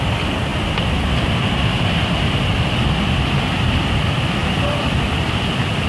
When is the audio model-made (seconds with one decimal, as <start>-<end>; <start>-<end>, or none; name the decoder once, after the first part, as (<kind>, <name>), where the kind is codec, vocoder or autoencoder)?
none